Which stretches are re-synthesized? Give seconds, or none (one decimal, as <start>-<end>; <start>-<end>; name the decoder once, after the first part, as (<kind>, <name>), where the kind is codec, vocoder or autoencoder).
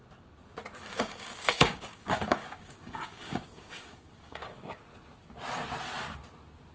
0.8-4.8 (codec, DAC)